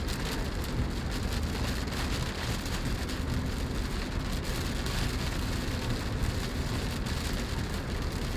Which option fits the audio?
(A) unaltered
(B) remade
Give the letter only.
A